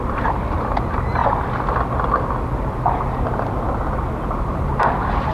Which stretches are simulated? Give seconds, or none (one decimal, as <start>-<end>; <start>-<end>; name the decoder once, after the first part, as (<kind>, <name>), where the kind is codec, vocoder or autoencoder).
0.0-1.2 (vocoder, BigVGAN v2); 4.4-5.3